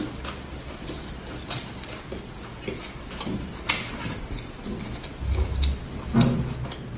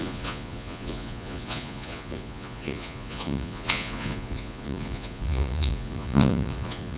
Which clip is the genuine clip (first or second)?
first